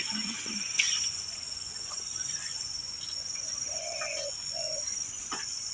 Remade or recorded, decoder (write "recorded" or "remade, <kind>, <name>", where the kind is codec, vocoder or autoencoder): remade, vocoder, Vocos